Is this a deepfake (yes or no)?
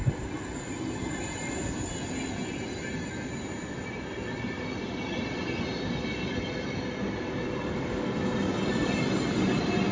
no